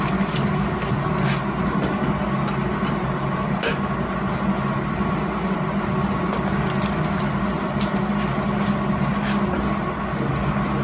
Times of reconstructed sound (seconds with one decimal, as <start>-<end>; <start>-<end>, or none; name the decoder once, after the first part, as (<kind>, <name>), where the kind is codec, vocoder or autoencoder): none